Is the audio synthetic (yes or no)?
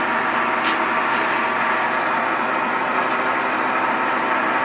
no